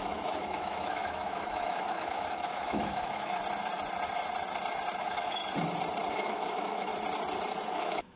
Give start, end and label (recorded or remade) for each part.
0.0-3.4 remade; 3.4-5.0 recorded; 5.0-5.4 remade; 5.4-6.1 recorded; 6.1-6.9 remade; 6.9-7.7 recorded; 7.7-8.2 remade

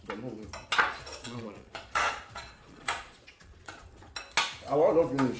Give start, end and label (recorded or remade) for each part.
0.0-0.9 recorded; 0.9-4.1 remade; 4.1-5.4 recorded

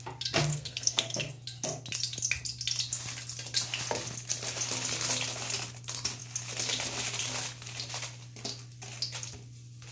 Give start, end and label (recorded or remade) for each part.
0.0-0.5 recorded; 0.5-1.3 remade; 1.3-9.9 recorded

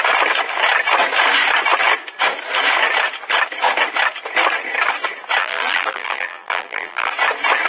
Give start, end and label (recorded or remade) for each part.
0.0-5.4 recorded; 5.4-7.1 remade; 7.1-7.7 recorded

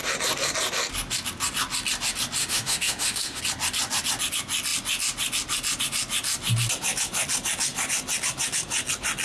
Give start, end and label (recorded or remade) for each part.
0.0-2.4 recorded; 2.4-3.4 remade; 3.4-9.2 recorded

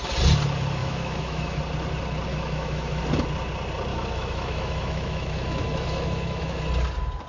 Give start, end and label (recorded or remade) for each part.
0.0-0.8 recorded; 0.8-1.6 remade; 1.6-2.3 recorded; 2.3-3.0 remade; 3.0-3.9 recorded; 3.9-6.6 remade; 6.6-7.3 recorded

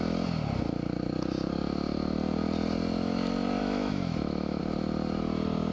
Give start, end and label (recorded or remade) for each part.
0.0-3.6 recorded; 3.6-4.6 remade; 4.6-5.7 recorded